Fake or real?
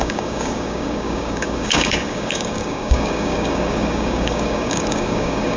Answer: fake